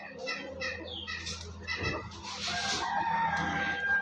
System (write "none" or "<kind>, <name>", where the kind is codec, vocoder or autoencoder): none